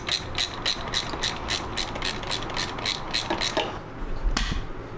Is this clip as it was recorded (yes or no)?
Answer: yes